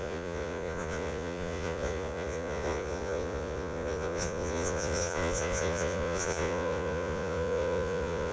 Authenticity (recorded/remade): remade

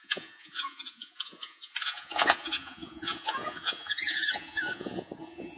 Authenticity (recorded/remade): remade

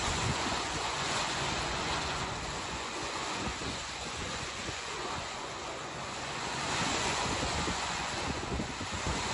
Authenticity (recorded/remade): remade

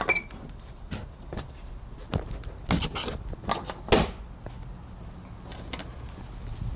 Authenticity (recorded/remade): recorded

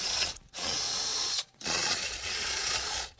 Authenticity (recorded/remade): remade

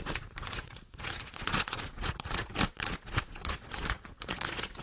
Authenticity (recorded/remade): remade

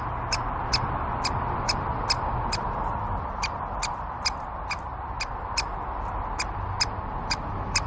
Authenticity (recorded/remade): recorded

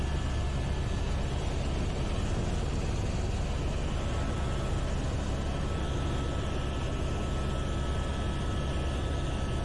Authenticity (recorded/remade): recorded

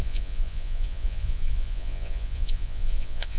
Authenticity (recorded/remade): remade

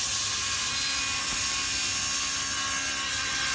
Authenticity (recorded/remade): recorded